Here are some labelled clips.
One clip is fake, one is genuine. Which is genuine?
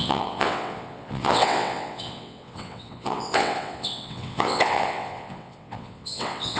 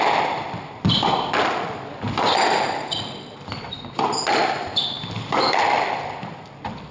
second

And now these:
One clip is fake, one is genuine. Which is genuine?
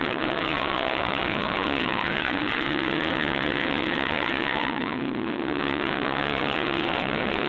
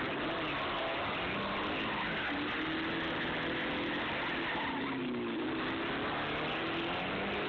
second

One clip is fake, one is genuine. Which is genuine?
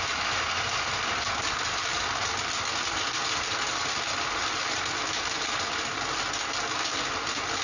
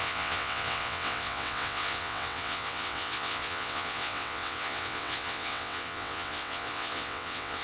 first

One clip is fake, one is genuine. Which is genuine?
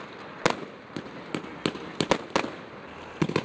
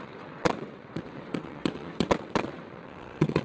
first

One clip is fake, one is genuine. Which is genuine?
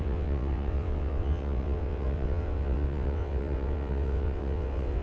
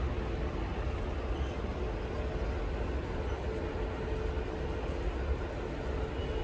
second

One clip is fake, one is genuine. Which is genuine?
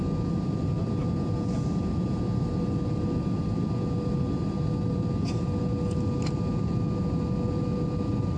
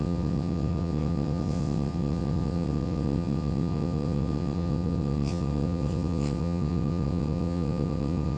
first